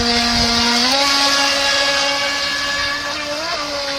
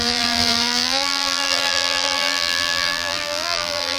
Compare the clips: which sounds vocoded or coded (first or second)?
second